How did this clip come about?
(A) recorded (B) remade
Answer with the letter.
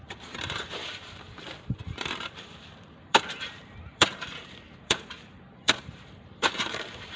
B